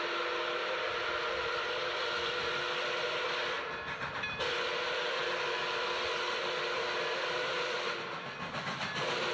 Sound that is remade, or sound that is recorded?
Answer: recorded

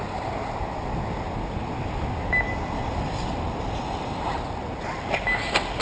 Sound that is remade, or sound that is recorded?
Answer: recorded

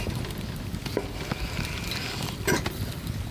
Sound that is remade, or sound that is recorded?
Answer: recorded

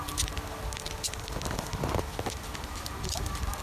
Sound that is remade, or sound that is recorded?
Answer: recorded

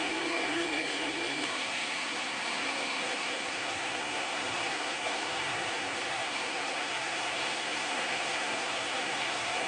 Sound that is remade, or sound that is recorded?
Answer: remade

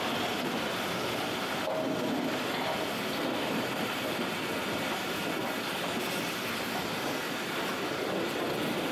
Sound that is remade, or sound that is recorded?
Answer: recorded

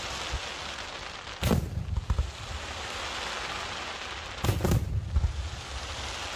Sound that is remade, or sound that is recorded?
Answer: recorded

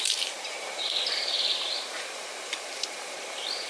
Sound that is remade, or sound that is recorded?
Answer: remade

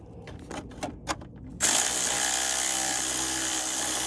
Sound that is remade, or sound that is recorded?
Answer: recorded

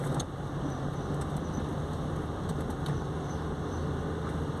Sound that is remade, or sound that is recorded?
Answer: recorded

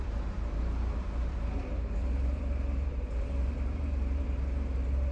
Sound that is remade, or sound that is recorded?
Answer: remade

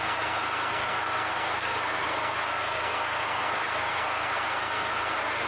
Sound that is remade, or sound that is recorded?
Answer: remade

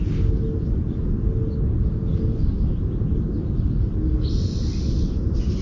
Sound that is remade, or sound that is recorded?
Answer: recorded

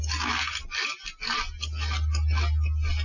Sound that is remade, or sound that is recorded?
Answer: recorded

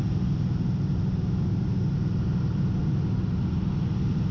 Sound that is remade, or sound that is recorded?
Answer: recorded